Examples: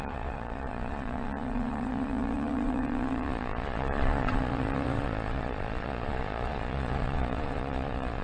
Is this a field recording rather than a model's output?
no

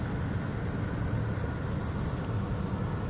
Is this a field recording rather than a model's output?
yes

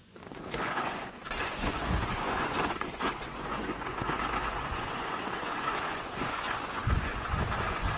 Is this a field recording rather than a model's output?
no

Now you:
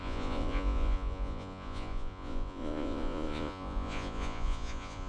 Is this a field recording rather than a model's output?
no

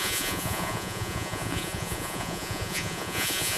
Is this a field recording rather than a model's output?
no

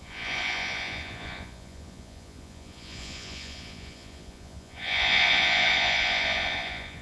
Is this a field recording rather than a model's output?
no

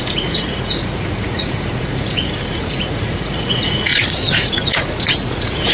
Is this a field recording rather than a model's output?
no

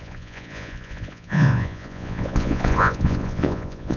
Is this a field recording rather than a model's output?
no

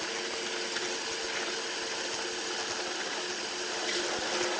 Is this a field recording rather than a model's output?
yes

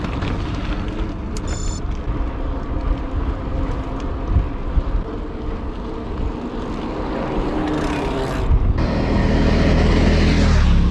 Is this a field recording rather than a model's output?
yes